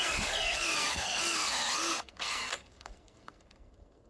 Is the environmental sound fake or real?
fake